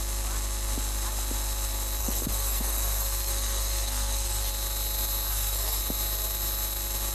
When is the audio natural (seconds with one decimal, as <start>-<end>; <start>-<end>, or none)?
0.0-2.0; 4.5-5.3; 5.8-7.1